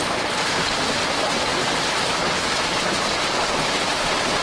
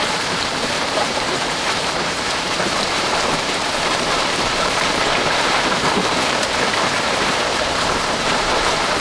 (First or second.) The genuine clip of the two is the first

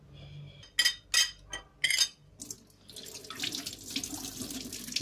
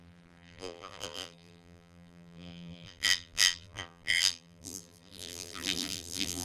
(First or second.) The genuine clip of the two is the first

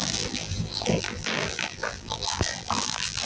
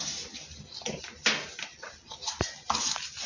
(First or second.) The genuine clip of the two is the second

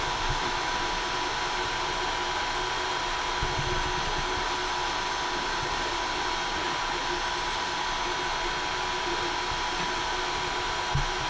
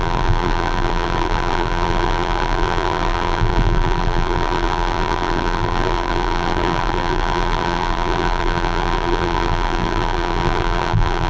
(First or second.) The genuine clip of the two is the first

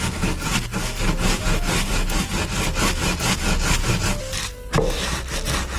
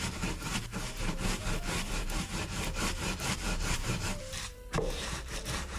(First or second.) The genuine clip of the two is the first